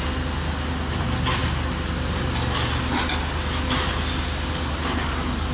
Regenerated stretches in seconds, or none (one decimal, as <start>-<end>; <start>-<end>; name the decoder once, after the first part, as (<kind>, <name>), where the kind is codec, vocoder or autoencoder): none